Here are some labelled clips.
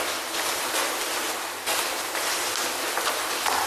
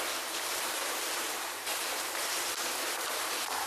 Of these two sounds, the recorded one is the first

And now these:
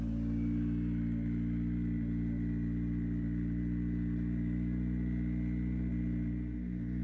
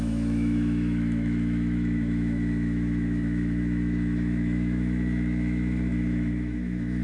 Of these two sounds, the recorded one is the first